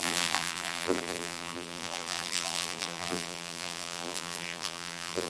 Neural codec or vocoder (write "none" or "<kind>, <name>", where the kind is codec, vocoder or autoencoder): vocoder, BigVGAN v2